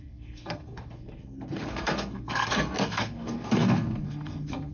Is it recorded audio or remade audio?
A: remade